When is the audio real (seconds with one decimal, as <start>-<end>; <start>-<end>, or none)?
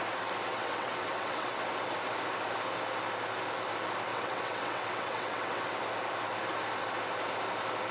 0.0-0.5; 1.7-4.1; 5.7-7.9